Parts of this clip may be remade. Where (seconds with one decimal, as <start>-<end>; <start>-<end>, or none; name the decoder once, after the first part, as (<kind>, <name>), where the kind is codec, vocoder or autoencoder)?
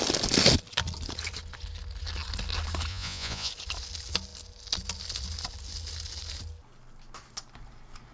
2.9-3.5 (vocoder, Vocos)